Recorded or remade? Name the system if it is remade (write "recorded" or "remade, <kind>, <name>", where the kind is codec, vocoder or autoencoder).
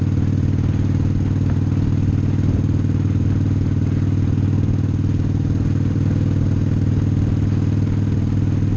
recorded